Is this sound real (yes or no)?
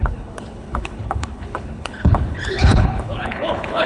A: no